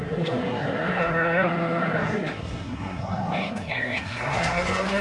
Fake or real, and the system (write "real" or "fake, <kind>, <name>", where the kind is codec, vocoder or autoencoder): fake, codec, SNAC